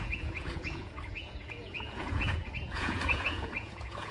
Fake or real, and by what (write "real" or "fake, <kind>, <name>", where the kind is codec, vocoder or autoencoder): fake, vocoder, Vocos